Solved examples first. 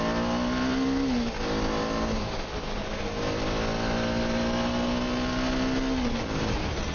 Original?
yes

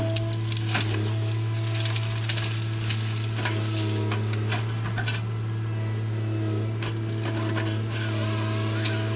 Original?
yes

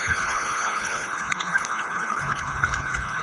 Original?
no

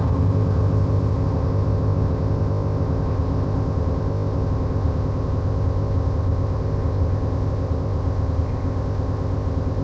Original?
no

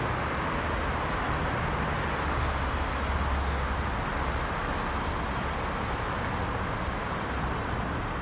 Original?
yes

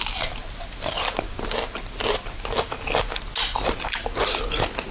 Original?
yes